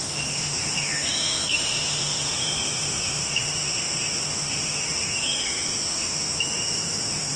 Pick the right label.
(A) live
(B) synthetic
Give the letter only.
B